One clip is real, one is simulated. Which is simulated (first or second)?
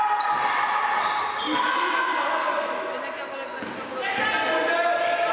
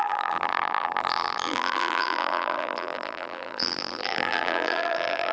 second